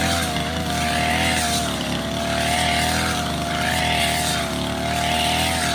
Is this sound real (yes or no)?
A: yes